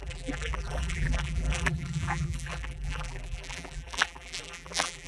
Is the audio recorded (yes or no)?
no